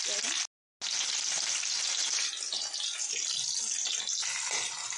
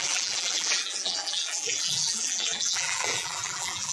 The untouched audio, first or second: first